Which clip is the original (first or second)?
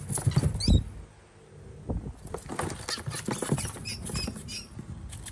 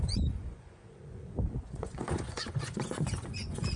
first